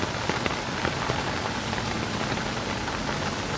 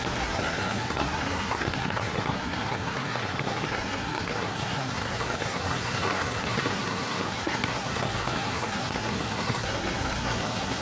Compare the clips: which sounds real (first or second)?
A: first